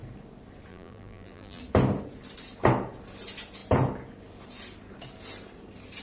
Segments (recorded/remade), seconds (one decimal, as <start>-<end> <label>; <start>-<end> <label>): 0.0-0.7 recorded; 0.7-1.6 remade; 1.6-6.0 recorded